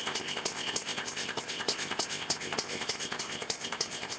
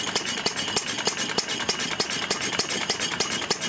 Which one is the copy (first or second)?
first